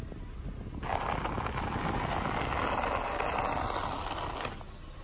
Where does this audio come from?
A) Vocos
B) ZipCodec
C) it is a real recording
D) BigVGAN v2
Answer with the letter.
C